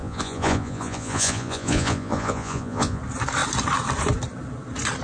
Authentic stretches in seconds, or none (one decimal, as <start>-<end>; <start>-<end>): 3.0-5.0